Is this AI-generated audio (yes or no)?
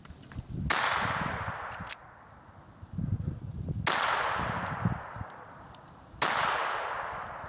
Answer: no